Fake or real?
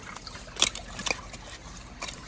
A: fake